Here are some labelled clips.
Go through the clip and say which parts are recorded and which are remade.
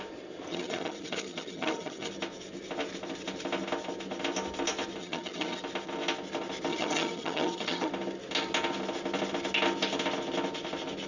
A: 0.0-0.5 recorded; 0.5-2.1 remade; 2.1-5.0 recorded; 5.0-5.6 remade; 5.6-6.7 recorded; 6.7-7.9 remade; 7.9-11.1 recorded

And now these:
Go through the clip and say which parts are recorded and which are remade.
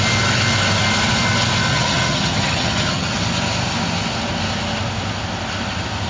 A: 0.0-1.7 recorded; 1.7-3.2 remade; 3.2-6.1 recorded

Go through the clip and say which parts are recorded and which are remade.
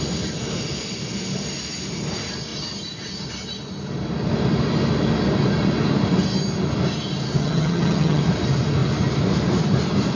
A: 0.0-7.4 recorded; 7.4-8.2 remade; 8.2-10.2 recorded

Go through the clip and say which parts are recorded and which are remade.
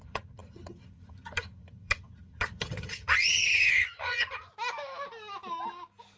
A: 0.0-4.5 remade; 4.5-6.2 recorded